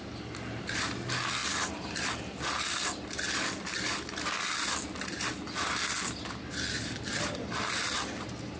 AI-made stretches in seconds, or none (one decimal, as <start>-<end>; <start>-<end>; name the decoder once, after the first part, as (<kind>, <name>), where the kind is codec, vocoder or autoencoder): none